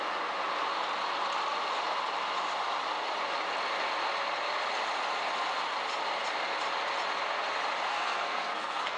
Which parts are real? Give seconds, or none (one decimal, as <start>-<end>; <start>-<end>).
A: 0.0-7.9